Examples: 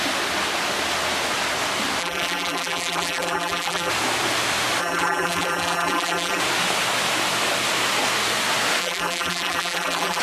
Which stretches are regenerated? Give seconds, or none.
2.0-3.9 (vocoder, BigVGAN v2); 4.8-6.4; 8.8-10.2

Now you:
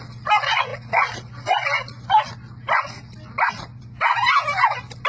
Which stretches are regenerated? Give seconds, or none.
none

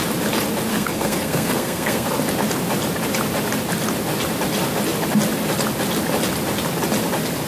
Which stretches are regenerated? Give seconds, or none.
0.7-2.1 (codec, SNAC)

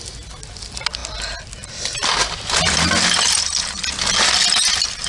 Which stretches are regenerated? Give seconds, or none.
none

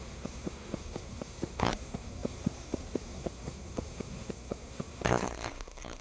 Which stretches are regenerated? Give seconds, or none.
0.0-6.0 (codec, SNAC)